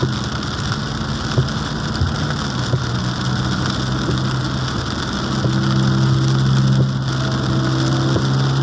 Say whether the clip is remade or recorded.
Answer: recorded